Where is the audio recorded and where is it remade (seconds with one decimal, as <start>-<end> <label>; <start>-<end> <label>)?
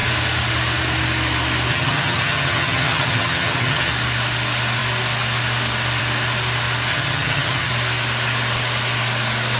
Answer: 0.0-1.7 recorded; 1.7-3.9 remade; 3.9-6.9 recorded; 6.9-7.7 remade; 7.7-9.6 recorded